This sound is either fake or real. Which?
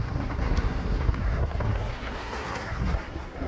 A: fake